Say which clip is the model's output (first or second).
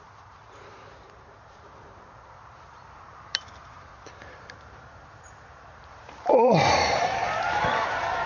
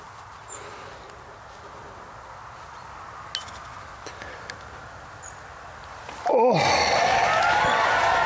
first